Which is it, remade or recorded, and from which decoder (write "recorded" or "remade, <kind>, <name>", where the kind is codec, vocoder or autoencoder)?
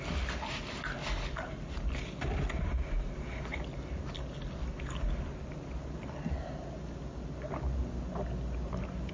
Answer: recorded